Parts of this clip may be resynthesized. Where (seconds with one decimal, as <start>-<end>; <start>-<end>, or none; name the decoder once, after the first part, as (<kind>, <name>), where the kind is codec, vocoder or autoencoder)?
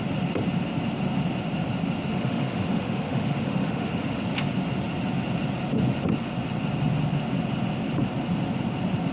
2.1-4.2 (autoencoder, DAC-VAE)